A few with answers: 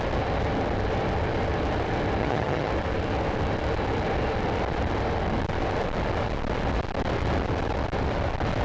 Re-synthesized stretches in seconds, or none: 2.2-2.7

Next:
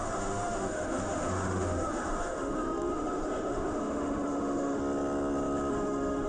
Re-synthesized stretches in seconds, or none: 0.0-4.8; 5.7-6.3

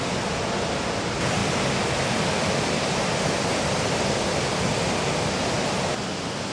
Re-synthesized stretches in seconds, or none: none

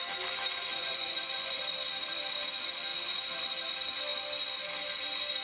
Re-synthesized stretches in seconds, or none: 0.7-1.6

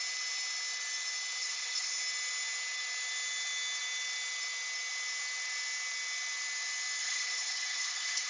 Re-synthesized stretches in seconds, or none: 1.4-2.0; 7.0-8.3

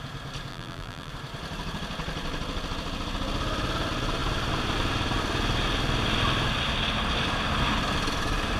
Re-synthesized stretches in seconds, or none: 0.5-1.1

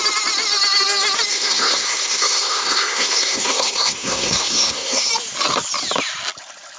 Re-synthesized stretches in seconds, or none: 1.3-5.1

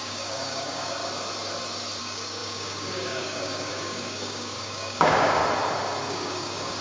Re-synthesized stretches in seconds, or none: 0.0-1.0; 2.0-5.4; 6.1-6.8